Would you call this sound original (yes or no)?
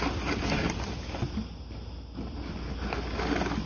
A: yes